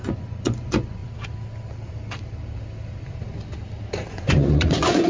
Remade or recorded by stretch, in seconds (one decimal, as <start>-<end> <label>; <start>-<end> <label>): 0.0-1.0 remade; 1.0-4.1 recorded; 4.1-5.1 remade